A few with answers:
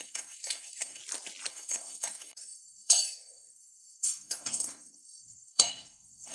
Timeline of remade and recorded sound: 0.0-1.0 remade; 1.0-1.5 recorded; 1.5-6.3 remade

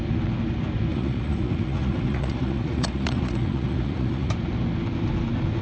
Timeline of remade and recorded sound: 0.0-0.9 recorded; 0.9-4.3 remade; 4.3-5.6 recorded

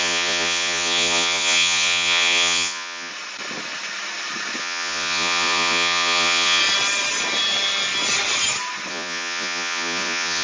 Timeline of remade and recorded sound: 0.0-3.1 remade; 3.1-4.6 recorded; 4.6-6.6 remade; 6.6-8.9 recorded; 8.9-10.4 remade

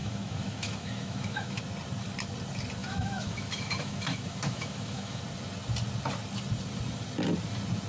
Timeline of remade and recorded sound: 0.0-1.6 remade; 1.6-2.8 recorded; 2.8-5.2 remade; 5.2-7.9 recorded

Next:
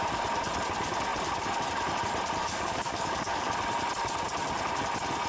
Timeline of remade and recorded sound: 0.0-2.4 recorded; 2.4-3.5 remade; 3.5-5.3 recorded

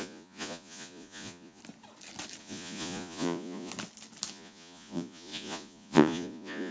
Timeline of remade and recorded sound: 0.0-1.6 remade; 1.6-2.4 recorded; 2.4-3.7 remade; 3.7-4.3 recorded; 4.3-6.7 remade

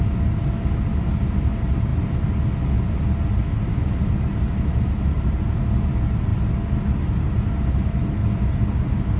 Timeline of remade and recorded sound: 0.0-9.2 recorded

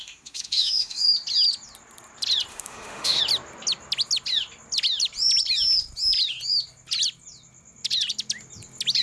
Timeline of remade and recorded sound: 0.0-1.1 remade; 1.1-2.5 recorded; 2.5-3.2 remade; 3.2-9.0 recorded